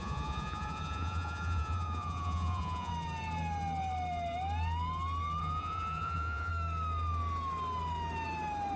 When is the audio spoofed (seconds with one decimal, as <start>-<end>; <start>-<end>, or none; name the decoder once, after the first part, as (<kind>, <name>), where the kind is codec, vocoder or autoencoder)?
0.0-2.9 (vocoder, Vocos); 5.4-6.5